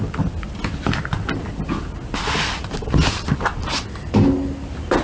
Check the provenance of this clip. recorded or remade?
recorded